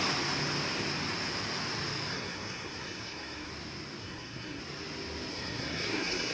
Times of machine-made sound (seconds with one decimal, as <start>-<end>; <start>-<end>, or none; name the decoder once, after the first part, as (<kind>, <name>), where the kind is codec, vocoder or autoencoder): 2.1-3.5 (codec, SNAC); 4.0-4.6; 5.3-6.3